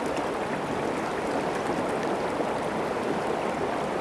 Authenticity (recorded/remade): recorded